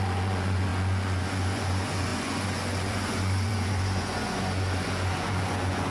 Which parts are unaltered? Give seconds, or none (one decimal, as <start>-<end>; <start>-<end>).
none